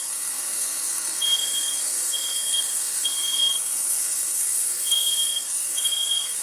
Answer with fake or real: fake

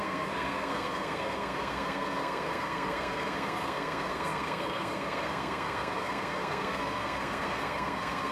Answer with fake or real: fake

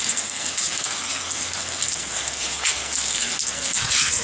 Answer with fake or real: fake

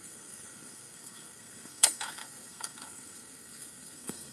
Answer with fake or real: fake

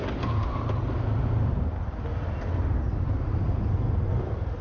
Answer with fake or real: real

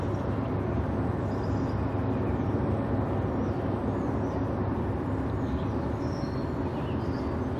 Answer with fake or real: real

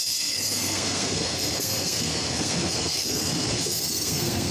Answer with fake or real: fake